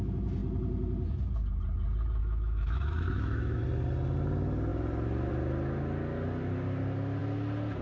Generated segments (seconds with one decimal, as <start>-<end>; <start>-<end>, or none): 2.2-3.6